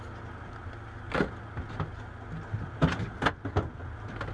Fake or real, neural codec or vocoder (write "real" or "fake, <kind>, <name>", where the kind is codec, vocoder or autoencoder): real